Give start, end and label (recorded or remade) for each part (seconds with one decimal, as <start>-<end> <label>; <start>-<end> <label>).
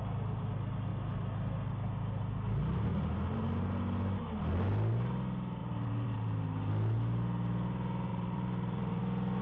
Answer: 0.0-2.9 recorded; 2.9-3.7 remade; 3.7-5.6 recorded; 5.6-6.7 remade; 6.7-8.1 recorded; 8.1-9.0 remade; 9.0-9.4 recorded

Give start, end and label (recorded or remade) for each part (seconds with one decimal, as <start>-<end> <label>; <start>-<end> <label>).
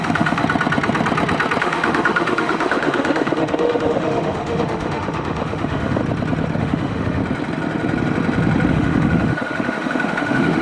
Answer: 0.0-0.4 remade; 0.4-1.6 recorded; 1.6-6.0 remade; 6.0-6.6 recorded; 6.6-7.2 remade; 7.2-8.7 recorded; 8.7-10.6 remade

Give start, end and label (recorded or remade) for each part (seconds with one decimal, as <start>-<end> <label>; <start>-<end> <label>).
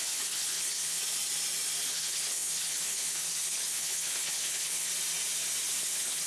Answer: 0.0-1.0 remade; 1.0-1.9 recorded; 1.9-4.9 remade; 4.9-5.8 recorded; 5.8-6.3 remade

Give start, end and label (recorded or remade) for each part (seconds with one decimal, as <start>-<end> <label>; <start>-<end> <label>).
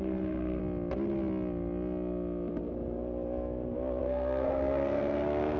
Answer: 0.0-0.6 remade; 0.6-4.0 recorded; 4.0-5.6 remade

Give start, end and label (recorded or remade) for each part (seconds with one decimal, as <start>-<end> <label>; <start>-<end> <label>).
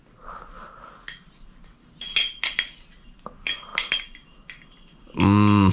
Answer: 0.0-5.7 recorded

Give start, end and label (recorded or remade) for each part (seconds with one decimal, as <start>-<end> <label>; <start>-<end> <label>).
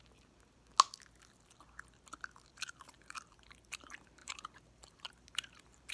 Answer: 0.0-2.5 recorded; 2.5-5.9 remade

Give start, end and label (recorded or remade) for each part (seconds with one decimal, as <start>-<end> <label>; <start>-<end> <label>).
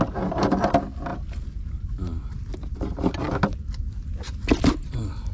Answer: 0.0-5.3 recorded